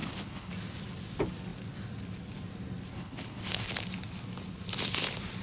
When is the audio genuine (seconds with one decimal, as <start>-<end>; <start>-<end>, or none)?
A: 0.5-2.9; 3.7-5.4